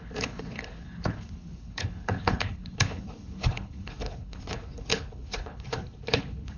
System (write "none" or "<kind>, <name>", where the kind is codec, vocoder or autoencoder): codec, HILCodec